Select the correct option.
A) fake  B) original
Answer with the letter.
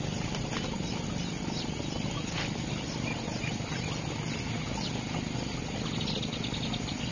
B